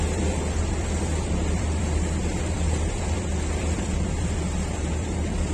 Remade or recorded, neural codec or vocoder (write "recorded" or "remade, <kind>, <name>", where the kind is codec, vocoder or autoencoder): remade, vocoder, BigVGAN v2